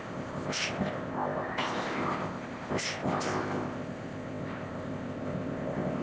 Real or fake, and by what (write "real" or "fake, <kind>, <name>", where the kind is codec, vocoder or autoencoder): fake, codec, ZipCodec